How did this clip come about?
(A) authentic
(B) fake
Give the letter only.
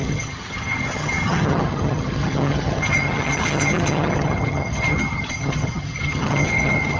B